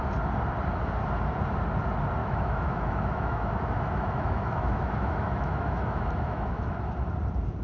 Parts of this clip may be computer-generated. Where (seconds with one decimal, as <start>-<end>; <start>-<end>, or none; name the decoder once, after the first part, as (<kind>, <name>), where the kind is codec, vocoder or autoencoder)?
2.2-6.8 (autoencoder, DAC-VAE)